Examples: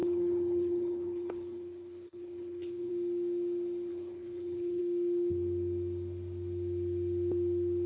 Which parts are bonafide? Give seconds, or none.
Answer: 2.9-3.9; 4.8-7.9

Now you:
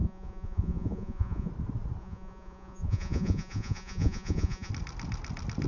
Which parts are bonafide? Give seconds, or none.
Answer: 1.5-2.0; 4.7-5.7

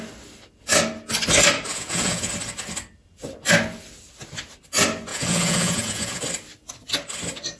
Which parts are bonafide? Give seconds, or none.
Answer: 0.0-1.7; 2.3-5.1; 6.2-7.6